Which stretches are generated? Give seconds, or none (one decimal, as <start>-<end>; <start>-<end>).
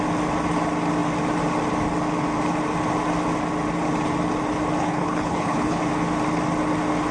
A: 4.8-5.8